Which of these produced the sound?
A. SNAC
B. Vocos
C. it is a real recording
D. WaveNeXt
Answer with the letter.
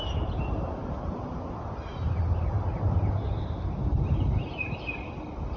C